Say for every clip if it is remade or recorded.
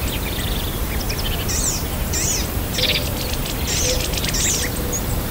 recorded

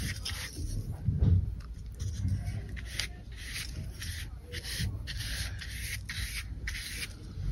recorded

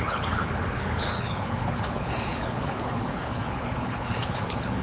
remade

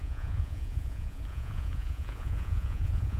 remade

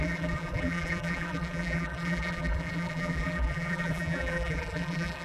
remade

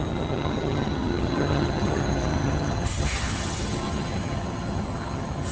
remade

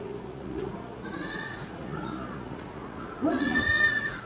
remade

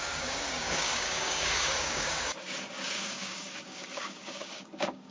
remade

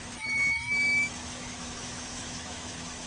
remade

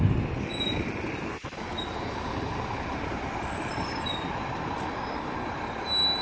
recorded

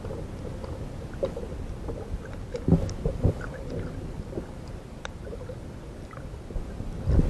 recorded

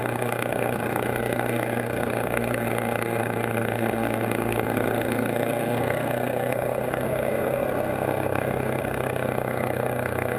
remade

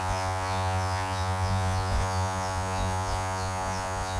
remade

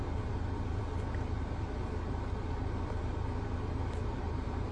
recorded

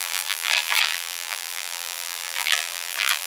remade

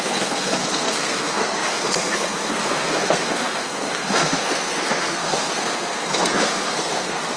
remade